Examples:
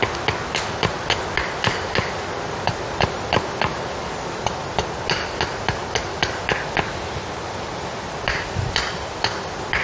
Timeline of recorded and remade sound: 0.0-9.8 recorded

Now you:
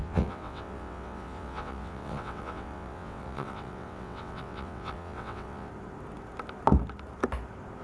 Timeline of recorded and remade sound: 0.0-5.7 remade; 5.7-7.8 recorded

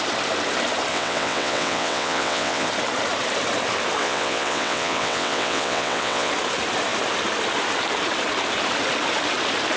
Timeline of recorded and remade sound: 0.0-0.9 recorded; 0.9-2.7 remade; 2.7-4.0 recorded; 4.0-6.3 remade; 6.3-9.8 recorded